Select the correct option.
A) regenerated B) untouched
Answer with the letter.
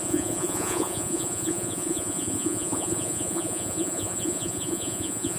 A